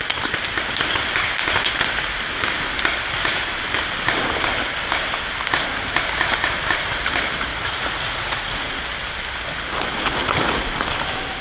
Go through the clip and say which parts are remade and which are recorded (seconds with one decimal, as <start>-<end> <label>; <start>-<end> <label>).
0.0-7.5 recorded; 7.5-8.7 remade; 8.7-11.4 recorded